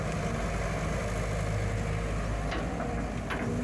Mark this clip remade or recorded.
recorded